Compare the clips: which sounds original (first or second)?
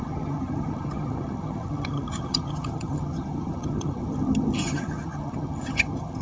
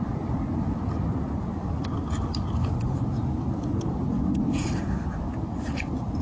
second